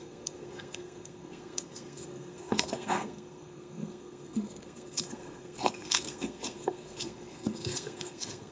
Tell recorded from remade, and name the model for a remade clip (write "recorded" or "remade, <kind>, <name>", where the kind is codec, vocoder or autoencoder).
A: remade, codec, SNAC